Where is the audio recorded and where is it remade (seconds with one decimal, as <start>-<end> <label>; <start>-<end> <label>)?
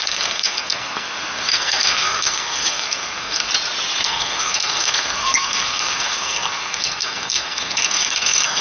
0.0-3.5 remade; 3.5-4.0 recorded; 4.0-8.6 remade